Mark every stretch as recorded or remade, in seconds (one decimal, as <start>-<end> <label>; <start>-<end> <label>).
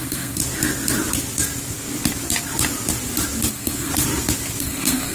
0.0-0.4 remade; 0.4-3.5 recorded; 3.5-3.9 remade; 3.9-4.6 recorded; 4.6-5.1 remade